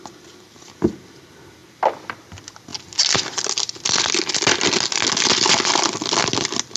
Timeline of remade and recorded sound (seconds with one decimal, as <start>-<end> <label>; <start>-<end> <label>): 0.0-6.8 recorded